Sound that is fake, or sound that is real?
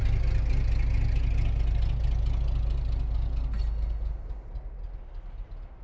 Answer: real